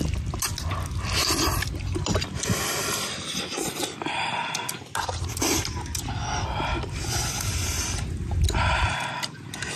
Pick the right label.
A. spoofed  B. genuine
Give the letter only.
B